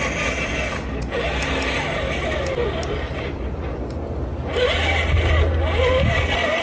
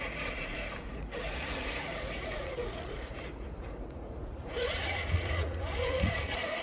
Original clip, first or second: first